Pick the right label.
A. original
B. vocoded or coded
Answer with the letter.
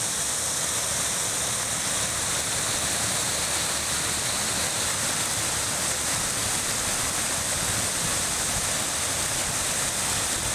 A